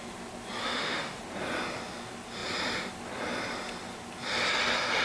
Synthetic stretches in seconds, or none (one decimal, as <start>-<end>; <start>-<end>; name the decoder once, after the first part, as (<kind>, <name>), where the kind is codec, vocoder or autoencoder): 0.6-1.2 (autoencoder, DAC-VAE)